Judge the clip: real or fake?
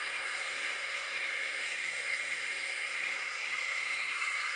fake